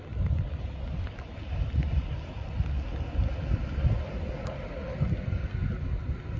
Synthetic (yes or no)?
no